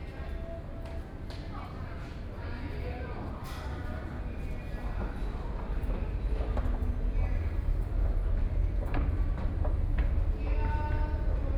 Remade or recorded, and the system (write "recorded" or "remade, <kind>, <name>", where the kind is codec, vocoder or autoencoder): recorded